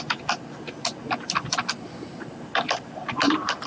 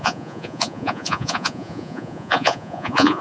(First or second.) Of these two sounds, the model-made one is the second